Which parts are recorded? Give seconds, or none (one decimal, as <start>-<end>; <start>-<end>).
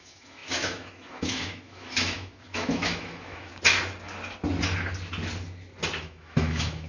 3.5-6.0